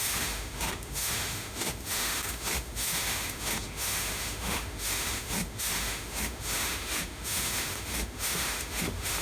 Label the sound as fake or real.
fake